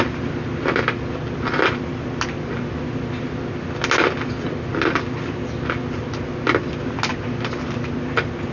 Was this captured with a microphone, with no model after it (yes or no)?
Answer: yes